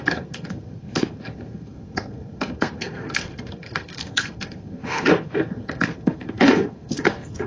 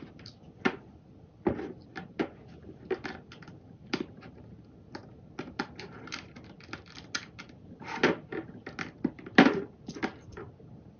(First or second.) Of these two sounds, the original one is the second